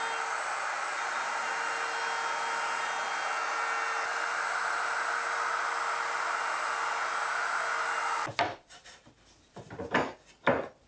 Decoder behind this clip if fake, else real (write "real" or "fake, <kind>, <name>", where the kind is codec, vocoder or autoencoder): real